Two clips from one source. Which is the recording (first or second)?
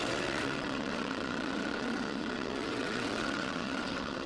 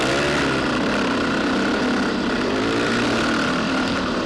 second